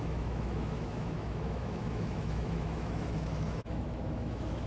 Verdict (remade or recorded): remade